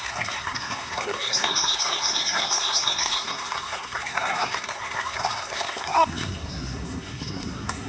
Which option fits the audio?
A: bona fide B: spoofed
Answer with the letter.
B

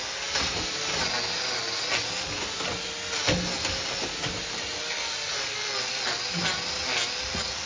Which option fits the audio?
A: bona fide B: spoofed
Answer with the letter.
A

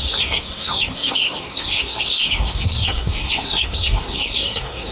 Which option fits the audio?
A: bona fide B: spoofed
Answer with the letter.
B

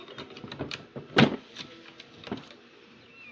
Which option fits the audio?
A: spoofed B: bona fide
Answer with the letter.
B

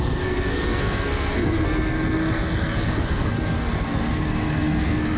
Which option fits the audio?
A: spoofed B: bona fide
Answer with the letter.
A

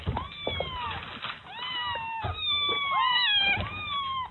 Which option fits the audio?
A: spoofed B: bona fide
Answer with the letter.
B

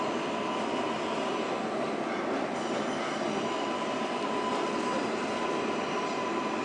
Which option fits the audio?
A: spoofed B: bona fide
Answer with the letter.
B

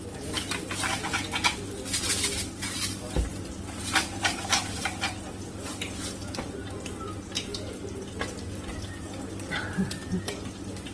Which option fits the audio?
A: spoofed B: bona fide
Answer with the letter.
B